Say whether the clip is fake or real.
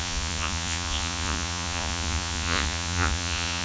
fake